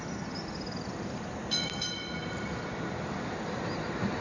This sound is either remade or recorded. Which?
recorded